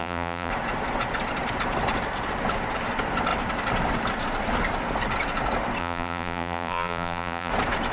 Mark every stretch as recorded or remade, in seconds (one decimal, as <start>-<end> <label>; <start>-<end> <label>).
0.0-0.5 remade; 0.5-5.8 recorded; 5.8-7.5 remade; 7.5-7.9 recorded